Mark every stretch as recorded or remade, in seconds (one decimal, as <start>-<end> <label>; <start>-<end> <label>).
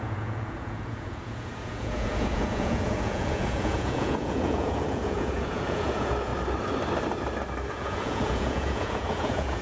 0.0-6.3 remade; 6.3-7.7 recorded; 7.7-9.6 remade